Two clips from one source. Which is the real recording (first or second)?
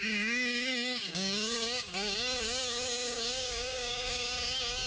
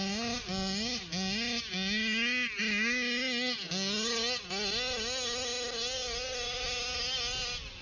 second